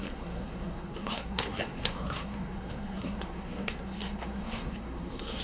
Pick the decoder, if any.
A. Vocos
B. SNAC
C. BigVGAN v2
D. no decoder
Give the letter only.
B